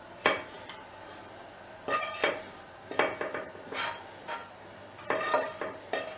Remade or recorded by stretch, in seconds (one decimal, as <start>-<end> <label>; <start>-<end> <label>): 0.0-6.2 recorded